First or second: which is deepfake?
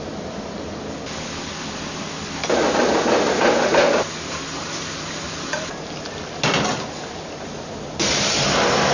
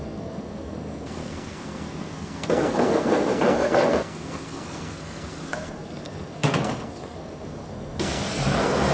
second